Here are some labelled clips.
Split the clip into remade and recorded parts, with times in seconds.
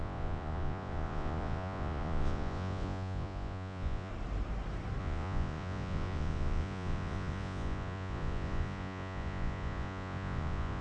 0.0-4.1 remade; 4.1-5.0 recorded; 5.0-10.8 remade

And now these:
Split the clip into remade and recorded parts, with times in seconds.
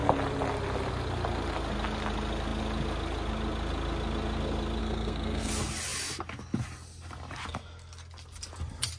0.0-4.8 recorded; 4.8-5.5 remade; 5.5-9.0 recorded